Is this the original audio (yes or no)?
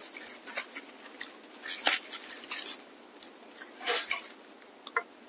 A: yes